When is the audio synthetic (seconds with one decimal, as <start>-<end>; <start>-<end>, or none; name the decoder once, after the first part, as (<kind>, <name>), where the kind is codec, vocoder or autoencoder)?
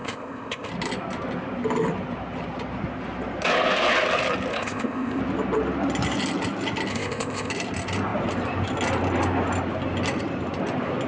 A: 0.0-0.7 (codec, ZipCodec); 4.5-5.2; 6.9-7.5